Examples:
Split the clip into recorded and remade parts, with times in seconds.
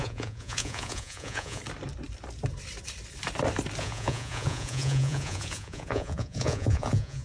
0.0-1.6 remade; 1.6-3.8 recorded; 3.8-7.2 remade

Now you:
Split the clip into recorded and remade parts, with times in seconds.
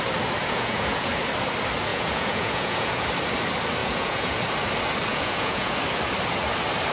0.0-0.4 recorded; 0.4-1.1 remade; 1.1-1.9 recorded; 1.9-3.1 remade; 3.1-3.8 recorded; 3.8-4.4 remade; 4.4-5.1 recorded; 5.1-5.8 remade; 5.8-6.9 recorded